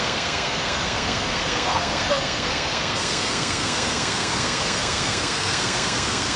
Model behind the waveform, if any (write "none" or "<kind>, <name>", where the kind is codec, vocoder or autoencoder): codec, SNAC